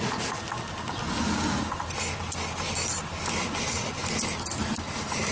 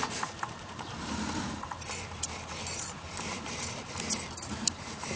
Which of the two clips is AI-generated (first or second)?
second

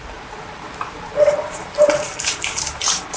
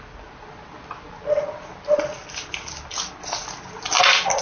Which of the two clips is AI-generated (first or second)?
first